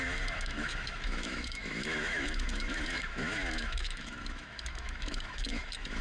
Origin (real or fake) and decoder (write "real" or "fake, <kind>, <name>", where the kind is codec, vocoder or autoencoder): fake, autoencoder, DAC-VAE